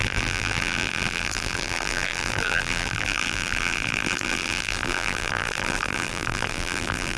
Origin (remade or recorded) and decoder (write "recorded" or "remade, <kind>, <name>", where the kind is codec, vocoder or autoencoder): remade, vocoder, BigVGAN v2